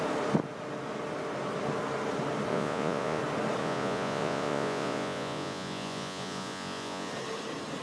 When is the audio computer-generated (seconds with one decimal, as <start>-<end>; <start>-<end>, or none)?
2.5-3.2; 3.6-7.1